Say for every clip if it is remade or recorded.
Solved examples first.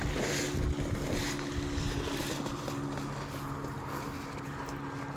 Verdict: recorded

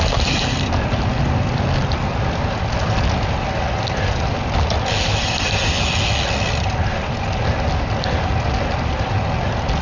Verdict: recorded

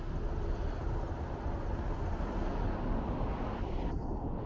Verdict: recorded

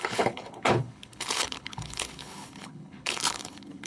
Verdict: remade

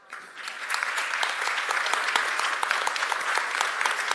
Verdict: remade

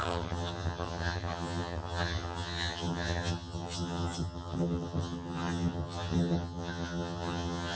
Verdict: remade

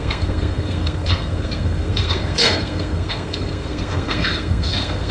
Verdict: remade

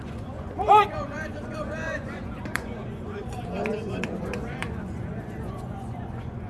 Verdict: remade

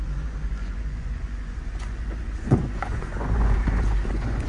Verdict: remade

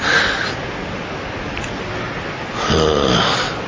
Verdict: recorded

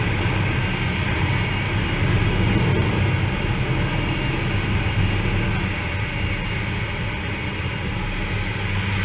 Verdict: recorded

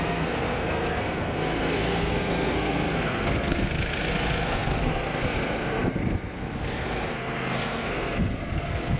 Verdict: remade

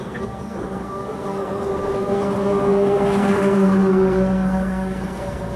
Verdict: remade